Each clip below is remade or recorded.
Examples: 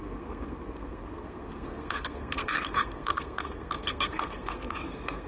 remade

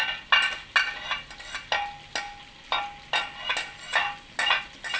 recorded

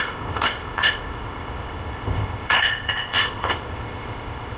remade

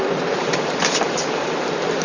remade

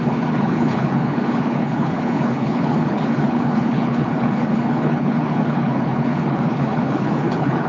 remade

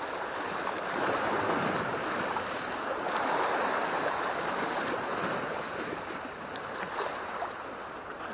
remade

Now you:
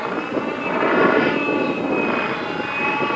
recorded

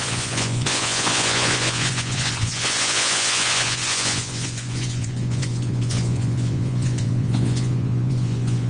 remade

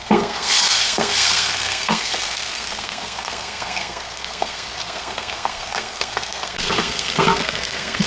remade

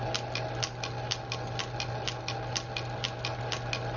recorded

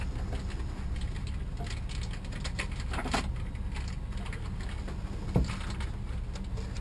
recorded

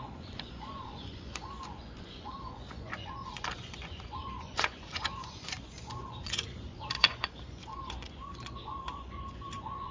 remade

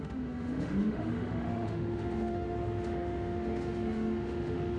remade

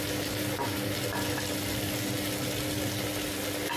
recorded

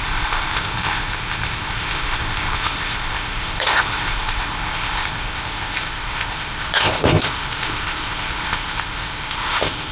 remade